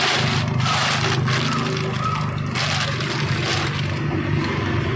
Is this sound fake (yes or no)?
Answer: no